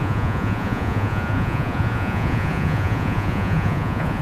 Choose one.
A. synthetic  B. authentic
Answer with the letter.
A